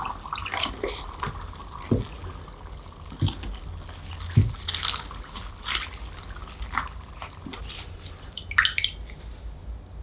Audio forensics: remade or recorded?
recorded